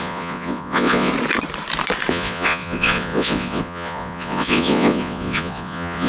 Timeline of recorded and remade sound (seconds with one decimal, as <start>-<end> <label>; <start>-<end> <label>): 0.0-1.1 remade; 1.1-2.1 recorded; 2.1-6.1 remade